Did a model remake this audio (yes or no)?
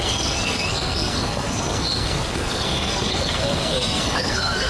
yes